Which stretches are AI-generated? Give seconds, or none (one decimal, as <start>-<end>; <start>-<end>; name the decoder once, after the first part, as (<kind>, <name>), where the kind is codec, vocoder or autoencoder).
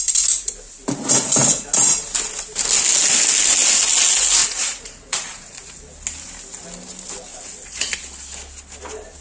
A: 4.4-5.8 (vocoder, Vocos); 7.3-7.9